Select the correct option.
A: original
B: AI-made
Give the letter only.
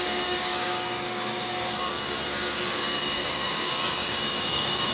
B